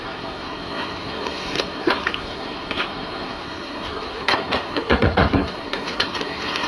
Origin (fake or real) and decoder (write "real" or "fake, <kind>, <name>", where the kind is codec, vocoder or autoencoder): fake, codec, SNAC